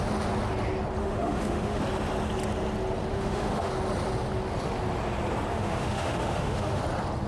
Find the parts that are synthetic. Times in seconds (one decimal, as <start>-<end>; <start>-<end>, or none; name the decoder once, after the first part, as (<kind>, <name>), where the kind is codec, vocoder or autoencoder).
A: 1.0-1.8 (autoencoder, DAC-VAE); 3.1-3.7; 5.5-6.8